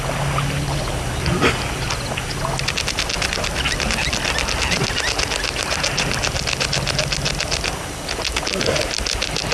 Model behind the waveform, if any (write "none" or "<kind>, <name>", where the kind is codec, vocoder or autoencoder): none